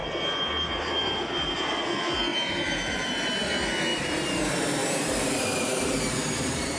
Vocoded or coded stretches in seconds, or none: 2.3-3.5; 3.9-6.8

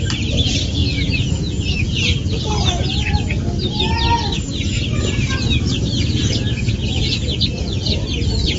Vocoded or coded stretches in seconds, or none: 0.8-2.5

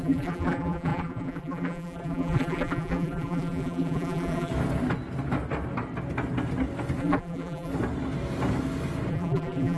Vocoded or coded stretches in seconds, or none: 0.0-4.5; 7.0-7.7; 9.1-9.8

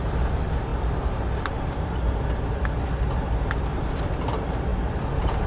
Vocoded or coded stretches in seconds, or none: 4.7-5.5

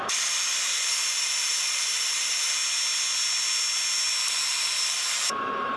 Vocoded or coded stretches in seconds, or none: 0.0-2.6; 4.3-5.8